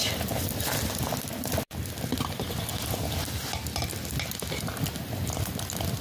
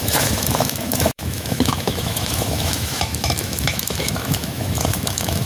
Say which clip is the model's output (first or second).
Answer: second